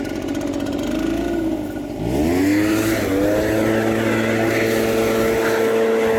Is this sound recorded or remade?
recorded